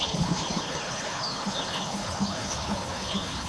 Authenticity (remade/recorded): remade